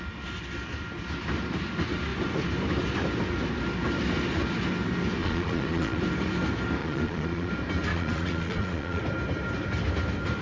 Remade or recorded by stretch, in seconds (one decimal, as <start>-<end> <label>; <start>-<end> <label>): 0.0-5.2 recorded; 5.2-6.0 remade; 6.0-6.8 recorded; 6.8-7.5 remade; 7.5-7.9 recorded; 7.9-9.0 remade; 9.0-10.4 recorded